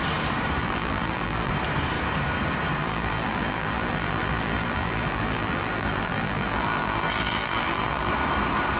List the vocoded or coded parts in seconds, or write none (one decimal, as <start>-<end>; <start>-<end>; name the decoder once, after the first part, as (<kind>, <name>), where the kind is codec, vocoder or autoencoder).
0.6-1.5 (vocoder, BigVGAN v2); 2.8-8.1